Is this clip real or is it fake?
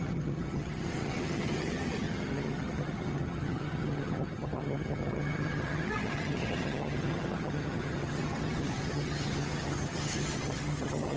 fake